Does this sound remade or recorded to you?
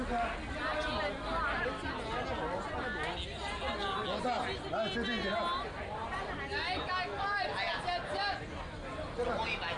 recorded